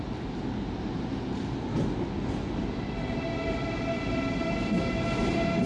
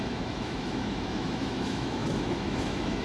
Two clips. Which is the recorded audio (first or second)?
first